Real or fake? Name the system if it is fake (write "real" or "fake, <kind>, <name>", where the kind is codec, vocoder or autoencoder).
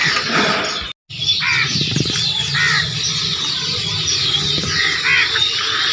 real